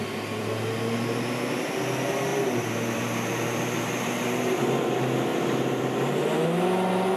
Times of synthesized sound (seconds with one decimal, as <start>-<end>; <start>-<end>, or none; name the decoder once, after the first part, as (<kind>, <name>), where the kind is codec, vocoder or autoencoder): 2.3-4.6 (vocoder, BigVGAN v2); 5.3-5.9